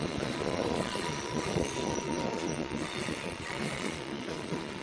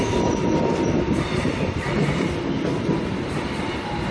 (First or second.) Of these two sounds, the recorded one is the second